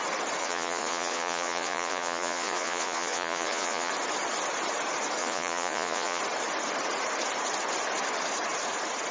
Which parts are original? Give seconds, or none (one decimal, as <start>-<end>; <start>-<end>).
0.0-0.4; 3.9-5.2; 6.2-9.1